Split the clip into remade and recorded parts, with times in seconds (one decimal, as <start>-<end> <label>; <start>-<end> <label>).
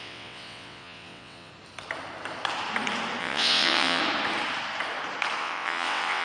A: 0.0-1.5 remade; 1.5-3.2 recorded; 3.2-4.0 remade; 4.0-5.4 recorded; 5.4-6.2 remade